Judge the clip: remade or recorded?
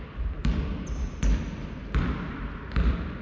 remade